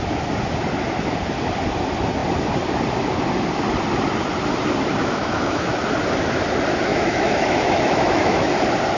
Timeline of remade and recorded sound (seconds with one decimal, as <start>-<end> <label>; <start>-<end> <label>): 0.0-5.0 recorded; 5.0-5.7 remade; 5.7-6.9 recorded; 6.9-8.5 remade; 8.5-9.0 recorded